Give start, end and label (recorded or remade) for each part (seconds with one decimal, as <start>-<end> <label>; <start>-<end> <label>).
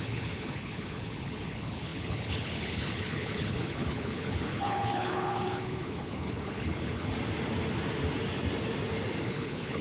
0.0-7.1 remade; 7.1-9.3 recorded; 9.3-9.8 remade